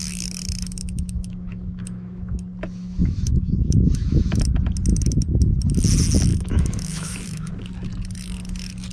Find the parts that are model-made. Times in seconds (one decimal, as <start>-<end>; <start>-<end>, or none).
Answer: 0.8-2.4; 2.8-4.4; 6.3-7.5